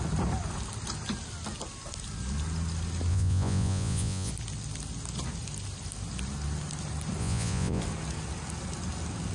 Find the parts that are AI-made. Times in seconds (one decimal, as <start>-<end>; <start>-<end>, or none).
3.1-4.3; 7.2-7.8